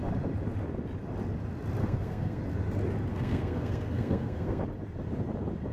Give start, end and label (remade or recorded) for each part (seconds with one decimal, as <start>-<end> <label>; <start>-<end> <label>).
0.0-1.8 recorded; 1.8-2.4 remade; 2.4-3.1 recorded; 3.1-4.6 remade; 4.6-5.7 recorded